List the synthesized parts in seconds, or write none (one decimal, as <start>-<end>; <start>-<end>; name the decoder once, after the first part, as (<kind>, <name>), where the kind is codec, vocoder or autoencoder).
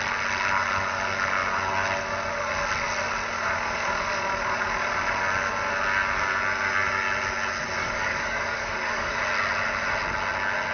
7.8-9.2 (codec, DAC)